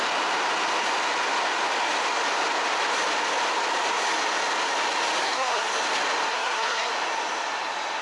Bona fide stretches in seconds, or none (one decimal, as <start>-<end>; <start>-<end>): 0.0-5.2; 5.7-6.3; 6.9-8.0